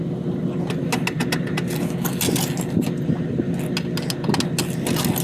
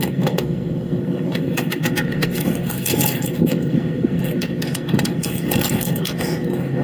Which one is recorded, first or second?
first